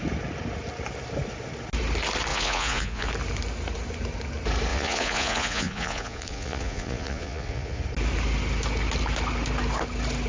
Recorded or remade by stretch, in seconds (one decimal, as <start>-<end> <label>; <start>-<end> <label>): 0.0-2.3 recorded; 2.3-3.1 remade; 3.1-4.7 recorded; 4.7-7.8 remade; 7.8-10.3 recorded